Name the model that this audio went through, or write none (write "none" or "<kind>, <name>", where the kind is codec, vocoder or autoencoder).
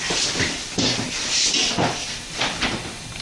none